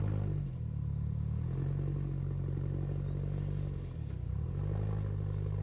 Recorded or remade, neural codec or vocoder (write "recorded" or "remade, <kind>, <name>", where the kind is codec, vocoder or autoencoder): recorded